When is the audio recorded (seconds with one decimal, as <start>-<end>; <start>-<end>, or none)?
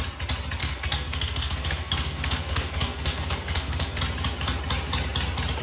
0.0-0.6; 4.0-5.6